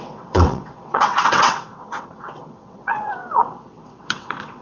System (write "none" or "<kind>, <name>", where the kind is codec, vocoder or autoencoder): vocoder, WaveNeXt